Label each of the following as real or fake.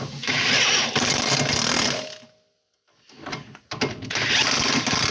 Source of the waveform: real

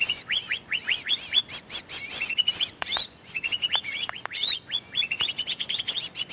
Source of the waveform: fake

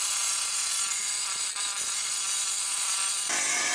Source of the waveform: real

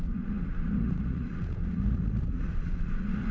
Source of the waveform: fake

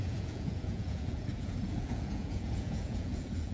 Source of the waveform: fake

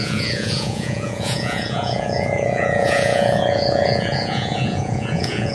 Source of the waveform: fake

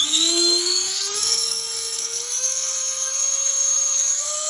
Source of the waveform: fake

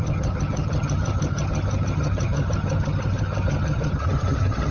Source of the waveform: fake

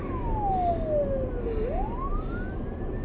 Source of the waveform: real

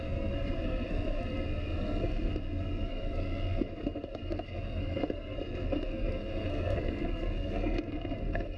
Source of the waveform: fake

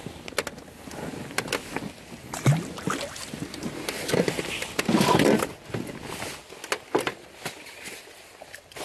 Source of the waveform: real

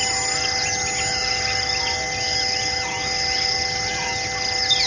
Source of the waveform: real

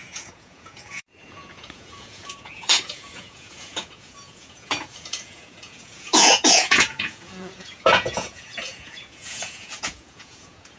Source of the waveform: fake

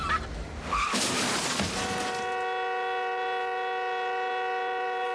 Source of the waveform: real